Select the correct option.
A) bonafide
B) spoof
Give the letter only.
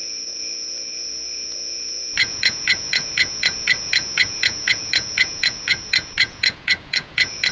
B